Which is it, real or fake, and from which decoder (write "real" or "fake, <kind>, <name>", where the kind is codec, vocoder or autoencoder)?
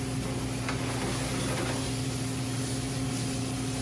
real